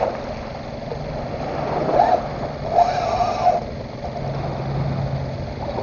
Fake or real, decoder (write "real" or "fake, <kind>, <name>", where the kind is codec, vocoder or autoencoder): real